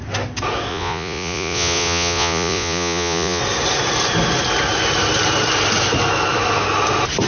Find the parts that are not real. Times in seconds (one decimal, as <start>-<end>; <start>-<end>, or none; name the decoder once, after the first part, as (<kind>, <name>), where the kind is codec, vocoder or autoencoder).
0.7-3.4 (vocoder, Vocos)